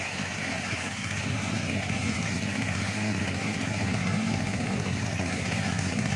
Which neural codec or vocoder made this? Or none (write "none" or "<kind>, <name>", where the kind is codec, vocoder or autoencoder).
codec, SNAC